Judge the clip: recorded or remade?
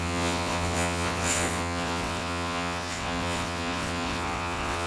remade